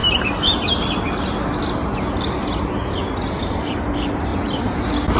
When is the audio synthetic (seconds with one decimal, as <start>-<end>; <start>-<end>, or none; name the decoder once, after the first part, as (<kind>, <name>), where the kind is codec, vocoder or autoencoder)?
3.1-4.3 (vocoder, BigVGAN v2)